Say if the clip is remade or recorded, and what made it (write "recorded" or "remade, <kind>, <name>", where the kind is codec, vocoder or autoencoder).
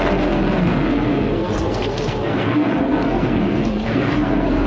remade, codec, SNAC